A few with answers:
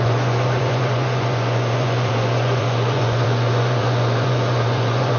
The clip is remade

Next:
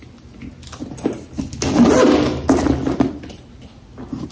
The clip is recorded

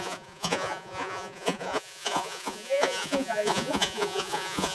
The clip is remade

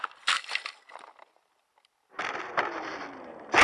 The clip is recorded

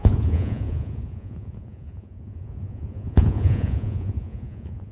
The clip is remade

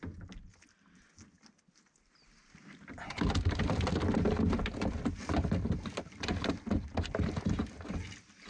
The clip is recorded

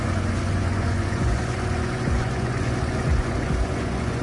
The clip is remade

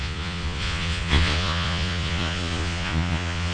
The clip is remade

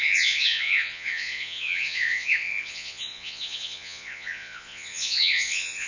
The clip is remade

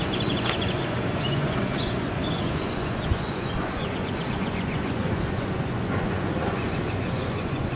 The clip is remade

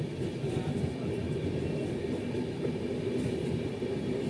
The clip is recorded